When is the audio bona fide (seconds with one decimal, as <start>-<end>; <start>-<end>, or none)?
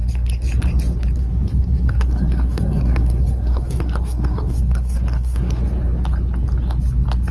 0.0-1.2; 5.6-7.3